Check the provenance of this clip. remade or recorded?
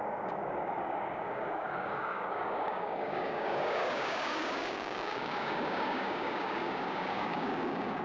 remade